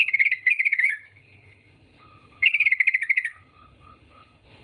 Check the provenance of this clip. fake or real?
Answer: fake